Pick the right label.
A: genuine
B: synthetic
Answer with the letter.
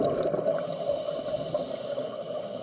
A